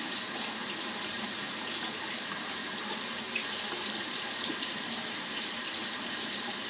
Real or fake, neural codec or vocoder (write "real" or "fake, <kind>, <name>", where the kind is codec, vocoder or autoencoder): fake, vocoder, BigVGAN v2